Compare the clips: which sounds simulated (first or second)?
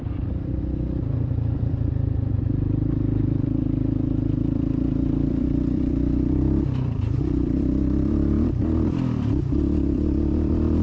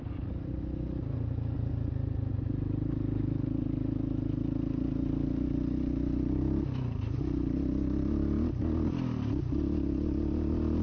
first